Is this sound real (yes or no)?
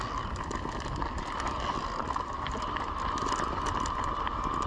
yes